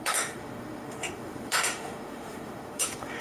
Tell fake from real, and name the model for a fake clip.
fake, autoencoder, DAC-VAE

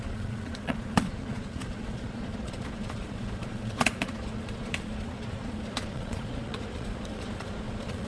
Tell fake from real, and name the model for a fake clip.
fake, vocoder, Vocos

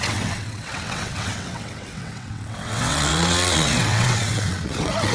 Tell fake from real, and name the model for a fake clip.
fake, vocoder, WaveNeXt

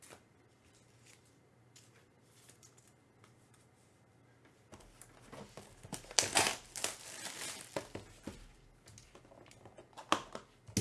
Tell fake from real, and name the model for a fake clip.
real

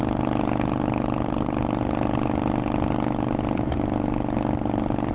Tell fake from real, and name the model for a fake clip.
real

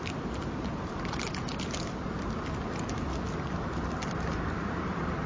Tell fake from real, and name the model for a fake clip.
real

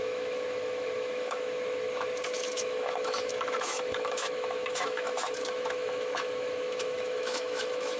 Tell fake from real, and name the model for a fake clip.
fake, autoencoder, DAC-VAE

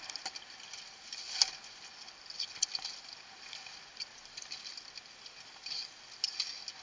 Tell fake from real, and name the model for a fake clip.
real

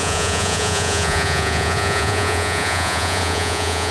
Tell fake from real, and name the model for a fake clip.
fake, vocoder, Vocos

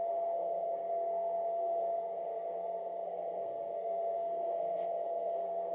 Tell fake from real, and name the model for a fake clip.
fake, codec, SNAC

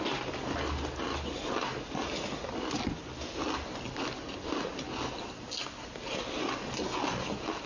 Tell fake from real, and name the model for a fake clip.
real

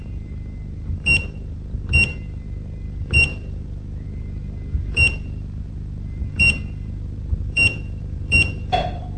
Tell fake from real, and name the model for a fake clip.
fake, vocoder, BigVGAN v2